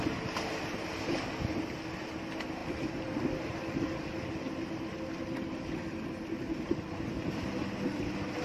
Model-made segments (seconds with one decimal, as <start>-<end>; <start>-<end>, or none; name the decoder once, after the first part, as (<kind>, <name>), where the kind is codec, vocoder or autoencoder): none